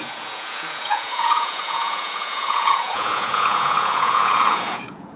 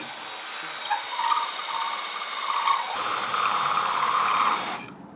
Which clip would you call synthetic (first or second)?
first